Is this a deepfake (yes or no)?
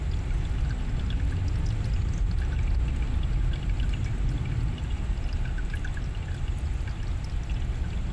no